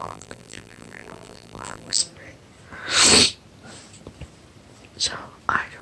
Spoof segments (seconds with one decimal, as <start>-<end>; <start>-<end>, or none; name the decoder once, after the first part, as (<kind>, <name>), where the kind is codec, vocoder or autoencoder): 0.0-2.0 (vocoder, BigVGAN v2)